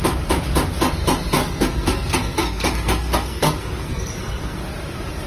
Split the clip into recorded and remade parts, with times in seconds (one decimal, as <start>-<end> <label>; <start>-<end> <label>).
0.0-1.4 recorded; 1.4-4.6 remade; 4.6-5.3 recorded